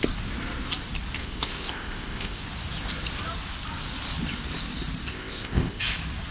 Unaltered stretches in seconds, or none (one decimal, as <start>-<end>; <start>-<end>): 0.0-1.2; 2.4-5.1; 5.8-6.3